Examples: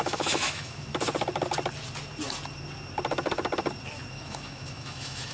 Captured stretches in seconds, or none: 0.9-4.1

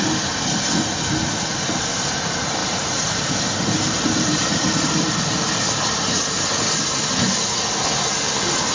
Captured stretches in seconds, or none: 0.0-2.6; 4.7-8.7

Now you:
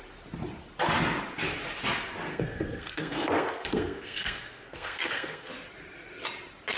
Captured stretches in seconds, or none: 0.0-2.3; 5.5-6.8

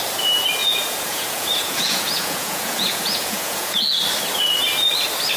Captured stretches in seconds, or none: 0.0-0.6; 3.8-5.4

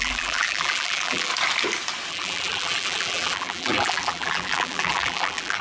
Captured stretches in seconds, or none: 1.3-2.1

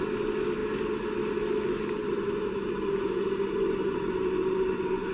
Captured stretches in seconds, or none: 0.0-2.0

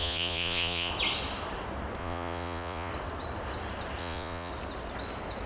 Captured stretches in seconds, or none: 0.9-2.0; 2.9-4.0; 4.5-5.5